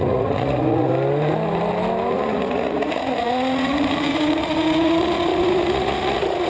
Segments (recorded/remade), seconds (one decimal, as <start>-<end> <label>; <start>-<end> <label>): 0.0-0.9 remade; 0.9-2.1 recorded; 2.1-6.5 remade